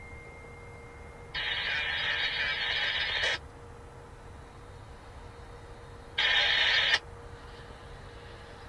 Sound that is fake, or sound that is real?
real